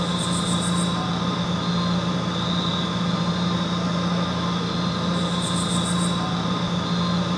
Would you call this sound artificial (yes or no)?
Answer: no